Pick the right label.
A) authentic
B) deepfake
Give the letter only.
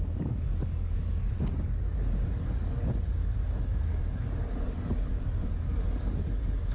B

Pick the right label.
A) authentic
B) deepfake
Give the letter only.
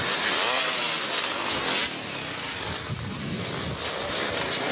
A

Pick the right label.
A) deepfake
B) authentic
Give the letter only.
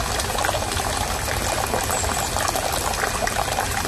B